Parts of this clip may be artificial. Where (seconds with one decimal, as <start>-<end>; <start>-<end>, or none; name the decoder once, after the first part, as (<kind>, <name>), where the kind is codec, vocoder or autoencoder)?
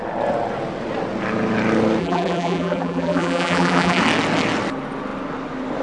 2.0-4.0 (vocoder, BigVGAN v2)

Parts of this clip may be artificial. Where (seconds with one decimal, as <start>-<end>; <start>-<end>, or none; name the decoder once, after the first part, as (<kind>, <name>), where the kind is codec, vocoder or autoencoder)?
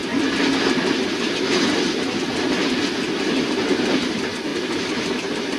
3.4-5.6 (vocoder, BigVGAN v2)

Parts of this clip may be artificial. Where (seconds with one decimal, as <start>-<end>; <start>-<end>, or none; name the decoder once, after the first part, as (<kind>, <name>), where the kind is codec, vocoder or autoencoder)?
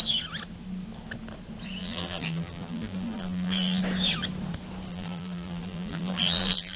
1.8-3.8 (vocoder, BigVGAN v2); 4.9-6.8